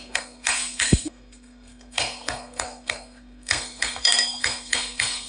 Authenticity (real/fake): fake